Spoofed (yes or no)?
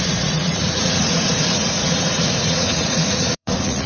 yes